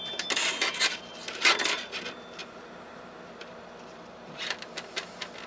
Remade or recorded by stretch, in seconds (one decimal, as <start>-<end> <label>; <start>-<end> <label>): 0.0-2.4 recorded; 2.4-5.1 remade; 5.1-5.5 recorded